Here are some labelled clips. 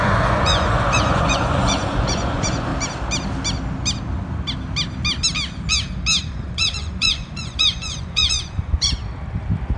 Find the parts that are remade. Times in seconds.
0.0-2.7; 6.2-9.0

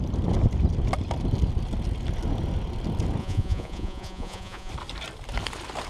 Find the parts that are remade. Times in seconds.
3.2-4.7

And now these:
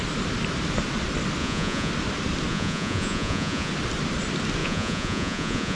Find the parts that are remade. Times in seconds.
1.4-1.9; 2.5-3.7; 4.6-5.8